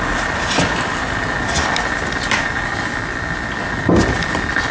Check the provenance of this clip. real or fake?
real